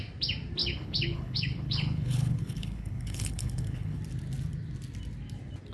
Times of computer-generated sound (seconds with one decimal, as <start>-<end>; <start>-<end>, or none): 0.6-4.0

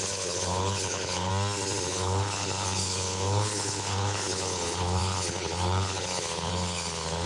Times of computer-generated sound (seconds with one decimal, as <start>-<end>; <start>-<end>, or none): 0.0-1.3; 1.9-7.3

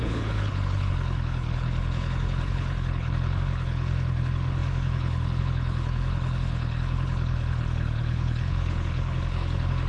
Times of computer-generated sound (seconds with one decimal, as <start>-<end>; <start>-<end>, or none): 0.0-9.9

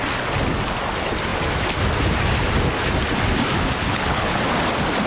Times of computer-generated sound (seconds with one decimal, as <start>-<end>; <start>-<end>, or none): 3.8-4.4